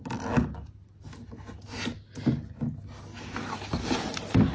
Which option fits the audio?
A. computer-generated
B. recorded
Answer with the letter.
B